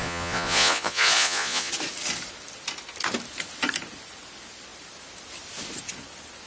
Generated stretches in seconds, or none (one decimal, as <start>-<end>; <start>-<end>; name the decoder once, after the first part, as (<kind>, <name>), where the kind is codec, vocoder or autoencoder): 0.0-1.7 (vocoder, Vocos)